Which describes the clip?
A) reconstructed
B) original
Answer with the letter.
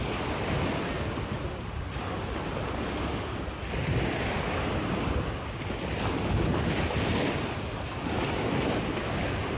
B